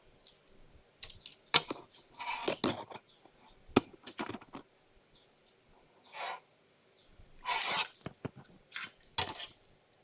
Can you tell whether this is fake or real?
real